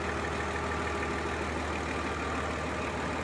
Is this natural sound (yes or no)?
yes